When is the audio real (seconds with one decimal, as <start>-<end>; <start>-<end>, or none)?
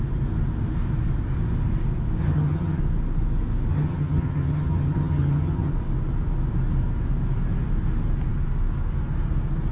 0.0-2.2; 2.8-3.7; 5.7-9.7